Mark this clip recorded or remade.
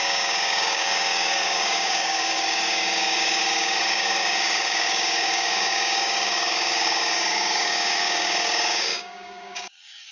remade